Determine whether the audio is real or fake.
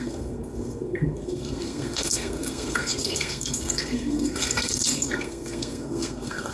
fake